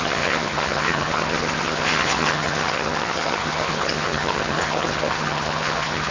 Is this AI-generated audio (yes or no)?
yes